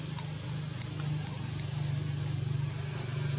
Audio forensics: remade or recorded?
recorded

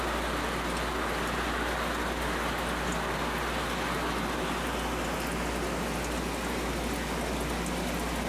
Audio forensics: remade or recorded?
recorded